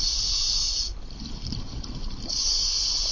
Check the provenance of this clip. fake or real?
real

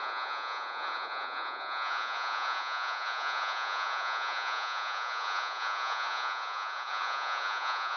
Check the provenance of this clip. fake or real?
fake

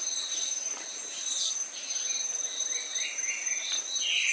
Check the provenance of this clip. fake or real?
real